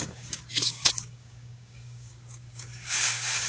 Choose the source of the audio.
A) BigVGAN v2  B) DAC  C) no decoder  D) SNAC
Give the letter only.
B